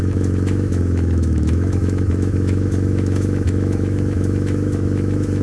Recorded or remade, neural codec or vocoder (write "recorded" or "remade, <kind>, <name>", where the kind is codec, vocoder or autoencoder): remade, autoencoder, DAC-VAE